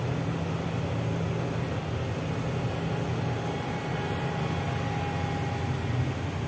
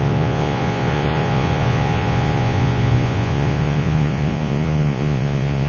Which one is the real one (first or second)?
first